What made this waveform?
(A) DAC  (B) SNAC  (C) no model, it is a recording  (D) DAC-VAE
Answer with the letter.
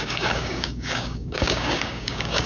A